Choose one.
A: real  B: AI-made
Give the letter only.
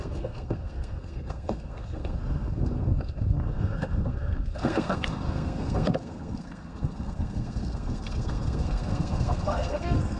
B